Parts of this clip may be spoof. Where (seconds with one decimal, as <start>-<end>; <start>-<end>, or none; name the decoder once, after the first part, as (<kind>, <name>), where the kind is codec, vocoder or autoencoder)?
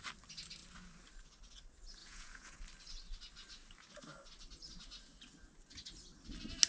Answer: 2.0-2.6 (vocoder, Vocos)